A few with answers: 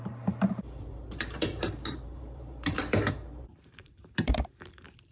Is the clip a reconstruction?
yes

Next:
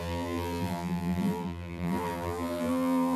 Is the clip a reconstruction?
yes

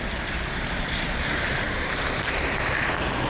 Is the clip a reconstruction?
yes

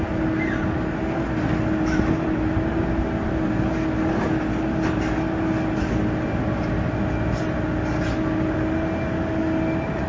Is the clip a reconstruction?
no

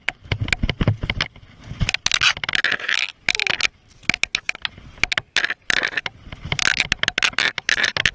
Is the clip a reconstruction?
no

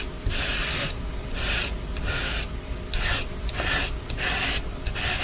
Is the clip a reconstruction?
no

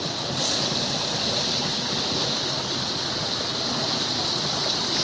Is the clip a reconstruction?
no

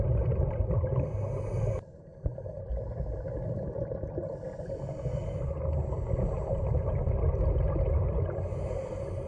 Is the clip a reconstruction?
no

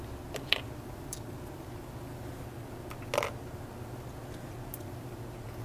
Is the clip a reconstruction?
no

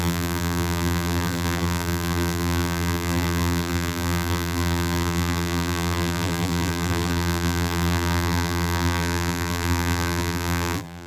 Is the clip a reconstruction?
yes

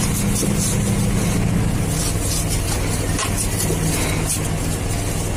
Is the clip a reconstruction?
no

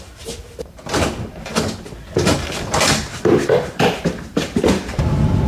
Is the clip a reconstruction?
yes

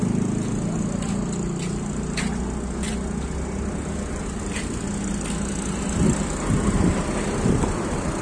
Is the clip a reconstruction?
no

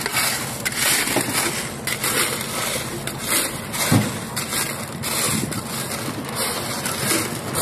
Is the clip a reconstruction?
no